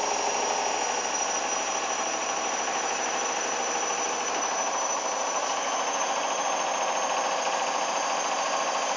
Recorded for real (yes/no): yes